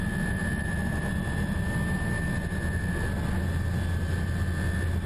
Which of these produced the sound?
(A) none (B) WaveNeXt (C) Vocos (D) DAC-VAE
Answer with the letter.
A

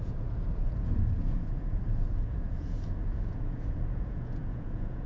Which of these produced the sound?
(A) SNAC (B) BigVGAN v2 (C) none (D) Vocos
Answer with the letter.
D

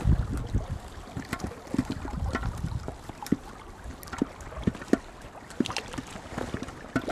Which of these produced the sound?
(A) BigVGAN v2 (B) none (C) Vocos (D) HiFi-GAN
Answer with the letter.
B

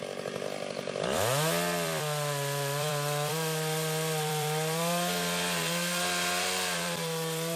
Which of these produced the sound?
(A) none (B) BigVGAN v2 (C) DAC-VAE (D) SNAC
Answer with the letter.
B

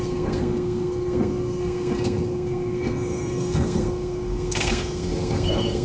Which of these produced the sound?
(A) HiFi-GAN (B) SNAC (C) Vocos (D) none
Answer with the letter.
B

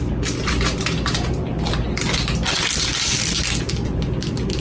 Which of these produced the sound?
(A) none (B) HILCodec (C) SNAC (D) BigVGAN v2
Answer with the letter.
A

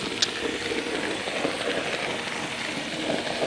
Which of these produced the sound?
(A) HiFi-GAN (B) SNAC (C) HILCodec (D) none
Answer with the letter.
D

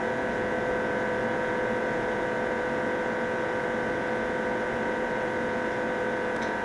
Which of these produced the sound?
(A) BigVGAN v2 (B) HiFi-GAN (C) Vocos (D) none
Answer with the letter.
C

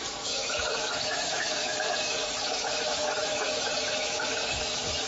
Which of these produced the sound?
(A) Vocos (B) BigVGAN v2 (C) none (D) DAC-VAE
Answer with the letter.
D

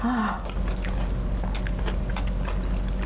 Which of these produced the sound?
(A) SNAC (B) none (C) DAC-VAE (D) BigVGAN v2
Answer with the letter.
B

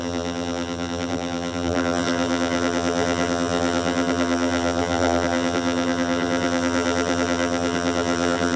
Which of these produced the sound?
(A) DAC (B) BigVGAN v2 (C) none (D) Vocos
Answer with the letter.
B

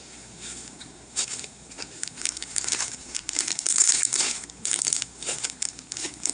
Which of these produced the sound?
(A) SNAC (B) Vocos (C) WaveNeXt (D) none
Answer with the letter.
A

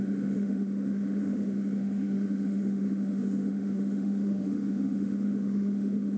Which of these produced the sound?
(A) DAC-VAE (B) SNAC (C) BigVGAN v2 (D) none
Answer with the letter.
A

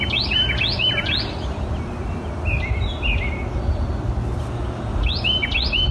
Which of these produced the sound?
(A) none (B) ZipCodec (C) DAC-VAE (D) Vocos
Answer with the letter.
A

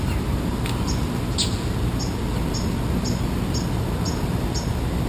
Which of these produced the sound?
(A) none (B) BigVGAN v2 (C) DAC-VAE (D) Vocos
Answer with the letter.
A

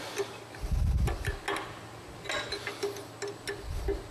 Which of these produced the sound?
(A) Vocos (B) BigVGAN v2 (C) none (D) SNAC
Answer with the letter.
C